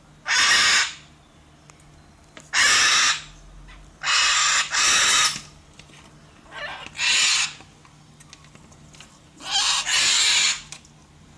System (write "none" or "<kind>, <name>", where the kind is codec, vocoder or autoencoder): none